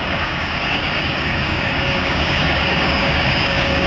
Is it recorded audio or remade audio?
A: remade